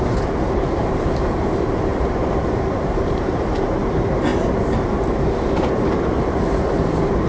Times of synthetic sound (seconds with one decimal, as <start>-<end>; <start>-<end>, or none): 0.0-7.3